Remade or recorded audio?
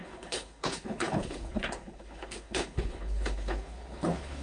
remade